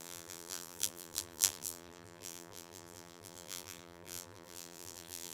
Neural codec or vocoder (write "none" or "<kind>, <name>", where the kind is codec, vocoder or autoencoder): vocoder, BigVGAN v2